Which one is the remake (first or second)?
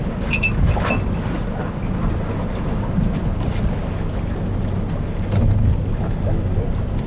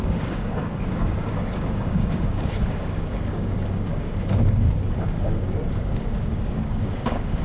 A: second